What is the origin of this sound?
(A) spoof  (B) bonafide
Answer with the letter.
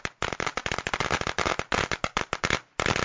B